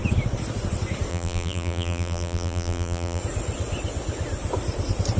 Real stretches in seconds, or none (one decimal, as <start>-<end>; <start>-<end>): 0.0-1.1; 3.2-5.2